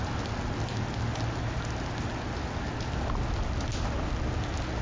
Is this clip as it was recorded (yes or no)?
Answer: yes